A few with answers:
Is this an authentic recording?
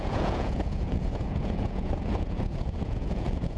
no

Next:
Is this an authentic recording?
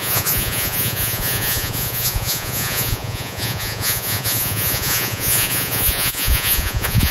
no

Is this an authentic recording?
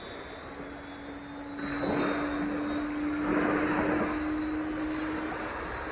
yes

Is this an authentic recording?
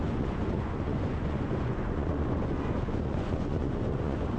no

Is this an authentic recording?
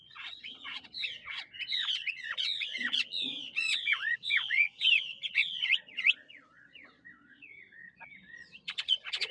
no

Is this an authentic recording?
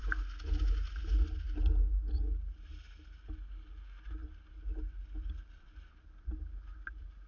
yes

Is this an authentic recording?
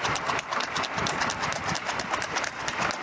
yes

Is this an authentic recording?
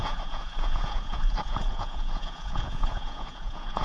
no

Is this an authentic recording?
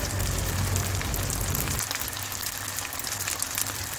yes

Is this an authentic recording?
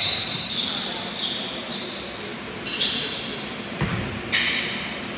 yes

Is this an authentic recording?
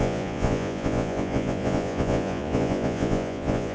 no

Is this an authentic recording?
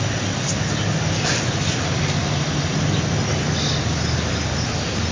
yes